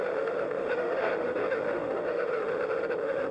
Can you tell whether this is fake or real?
fake